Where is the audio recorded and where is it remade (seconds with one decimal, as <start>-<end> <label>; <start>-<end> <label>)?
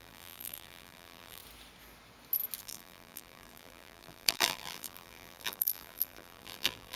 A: 0.0-1.4 remade; 1.4-2.6 recorded; 2.6-7.0 remade